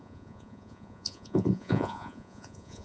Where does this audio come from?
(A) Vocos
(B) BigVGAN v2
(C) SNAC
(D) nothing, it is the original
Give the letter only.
A